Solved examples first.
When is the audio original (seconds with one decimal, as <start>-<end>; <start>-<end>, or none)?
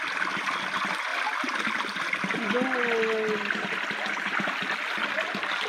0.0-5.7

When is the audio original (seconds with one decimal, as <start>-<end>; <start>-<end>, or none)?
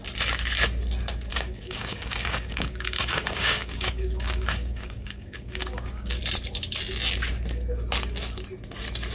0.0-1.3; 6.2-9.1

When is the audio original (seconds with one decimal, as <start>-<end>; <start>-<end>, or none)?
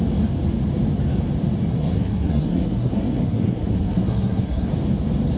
0.0-1.7; 4.7-5.4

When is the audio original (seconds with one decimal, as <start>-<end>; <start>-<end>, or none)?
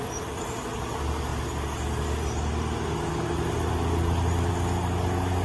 0.0-5.4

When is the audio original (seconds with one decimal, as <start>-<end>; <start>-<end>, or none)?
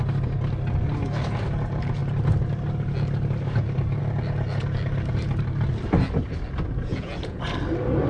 0.0-6.9; 7.4-8.1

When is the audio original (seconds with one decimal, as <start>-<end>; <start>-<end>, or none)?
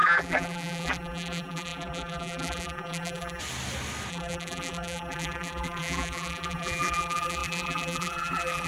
3.4-4.1